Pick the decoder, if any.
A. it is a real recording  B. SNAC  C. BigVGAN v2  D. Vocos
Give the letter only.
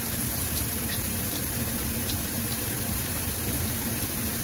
C